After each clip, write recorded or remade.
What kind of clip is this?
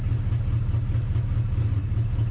recorded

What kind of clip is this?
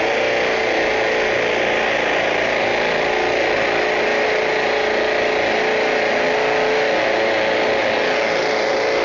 recorded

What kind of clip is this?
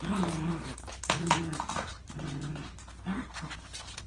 recorded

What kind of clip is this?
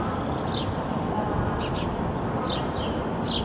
recorded